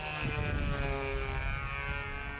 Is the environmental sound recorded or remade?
recorded